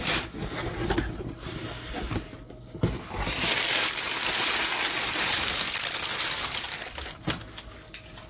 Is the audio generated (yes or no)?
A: no